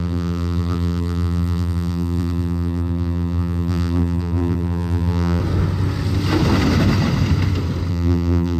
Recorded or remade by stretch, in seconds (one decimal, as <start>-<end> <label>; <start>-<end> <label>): 0.0-5.4 remade; 5.4-7.9 recorded; 7.9-8.6 remade